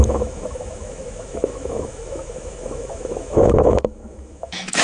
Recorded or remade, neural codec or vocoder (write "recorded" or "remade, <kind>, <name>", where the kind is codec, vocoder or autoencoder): remade, autoencoder, DAC-VAE